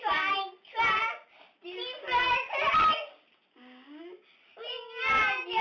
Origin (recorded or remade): recorded